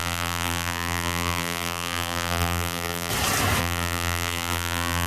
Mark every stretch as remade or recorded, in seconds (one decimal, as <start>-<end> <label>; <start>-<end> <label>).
0.0-3.1 remade; 3.1-3.6 recorded; 3.6-5.1 remade